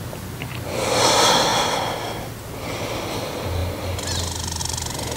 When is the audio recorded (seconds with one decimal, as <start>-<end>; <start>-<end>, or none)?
0.0-3.6; 4.6-5.2